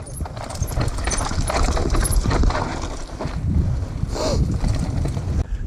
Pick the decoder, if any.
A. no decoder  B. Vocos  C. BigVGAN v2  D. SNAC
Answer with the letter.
C